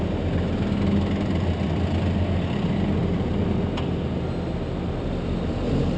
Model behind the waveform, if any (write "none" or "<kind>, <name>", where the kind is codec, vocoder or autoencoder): none